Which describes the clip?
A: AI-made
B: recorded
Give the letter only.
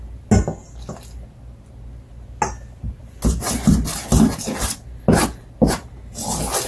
B